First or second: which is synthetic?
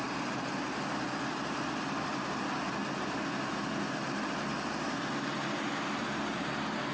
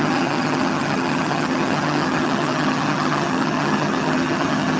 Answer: second